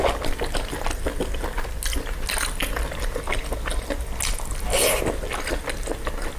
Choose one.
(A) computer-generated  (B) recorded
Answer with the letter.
B